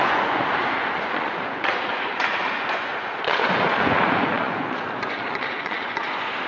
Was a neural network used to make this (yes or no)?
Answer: yes